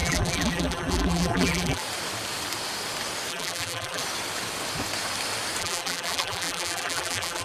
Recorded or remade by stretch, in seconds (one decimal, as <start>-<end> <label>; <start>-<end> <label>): 0.0-1.8 remade; 1.8-3.3 recorded; 3.3-4.0 remade; 4.0-5.6 recorded; 5.6-7.4 remade